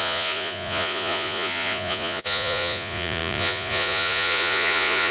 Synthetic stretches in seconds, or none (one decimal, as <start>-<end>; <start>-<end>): 0.0-5.1